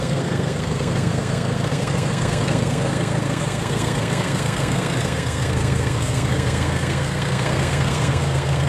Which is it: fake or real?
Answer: fake